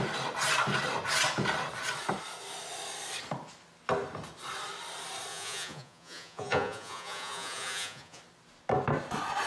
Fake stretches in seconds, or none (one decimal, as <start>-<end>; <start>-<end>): 5.3-8.2